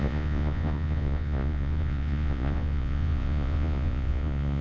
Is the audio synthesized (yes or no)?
yes